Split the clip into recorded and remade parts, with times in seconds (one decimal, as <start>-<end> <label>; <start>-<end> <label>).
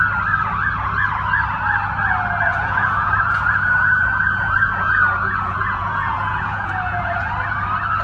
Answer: 0.0-2.5 recorded; 2.5-7.3 remade; 7.3-8.0 recorded